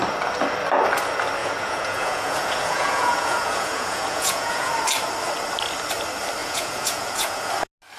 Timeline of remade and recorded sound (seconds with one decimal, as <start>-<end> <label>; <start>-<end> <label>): 0.0-1.4 recorded; 1.4-4.7 remade; 4.7-6.4 recorded; 6.4-7.5 remade; 7.5-8.0 recorded